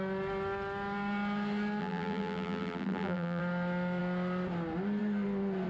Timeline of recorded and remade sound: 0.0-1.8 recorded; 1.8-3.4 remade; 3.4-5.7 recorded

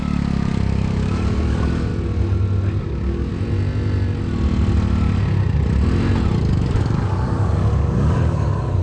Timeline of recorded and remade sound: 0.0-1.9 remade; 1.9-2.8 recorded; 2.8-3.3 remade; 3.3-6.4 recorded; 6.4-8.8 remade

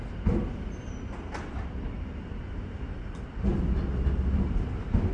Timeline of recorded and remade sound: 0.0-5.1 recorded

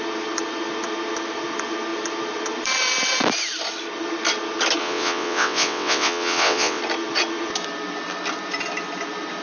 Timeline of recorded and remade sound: 0.0-4.8 recorded; 4.8-6.8 remade; 6.8-9.4 recorded

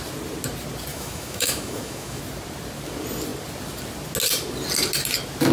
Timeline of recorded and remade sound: 0.0-0.9 recorded; 0.9-2.2 remade; 2.2-5.5 recorded